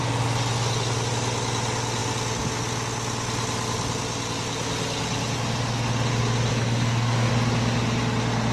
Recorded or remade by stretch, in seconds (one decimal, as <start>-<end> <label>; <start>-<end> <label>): 0.0-6.5 recorded; 6.5-7.3 remade; 7.3-8.5 recorded